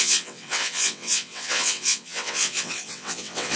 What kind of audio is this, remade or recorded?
remade